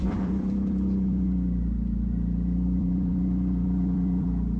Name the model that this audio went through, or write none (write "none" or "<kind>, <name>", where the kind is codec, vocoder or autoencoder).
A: vocoder, BigVGAN v2